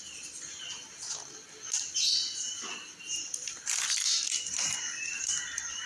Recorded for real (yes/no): yes